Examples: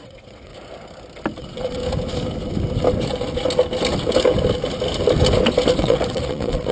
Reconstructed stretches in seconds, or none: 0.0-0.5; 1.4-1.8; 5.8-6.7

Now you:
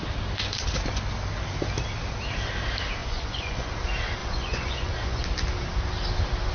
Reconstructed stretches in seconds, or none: 3.0-3.7; 4.2-5.2

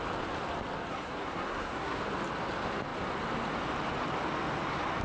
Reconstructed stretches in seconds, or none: 0.9-2.0